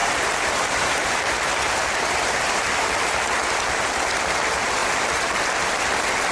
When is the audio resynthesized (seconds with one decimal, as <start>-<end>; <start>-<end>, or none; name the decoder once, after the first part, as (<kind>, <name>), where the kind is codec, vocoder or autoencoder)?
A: 0.0-3.0 (vocoder, BigVGAN v2); 4.8-5.4